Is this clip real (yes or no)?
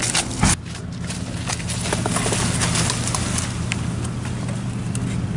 yes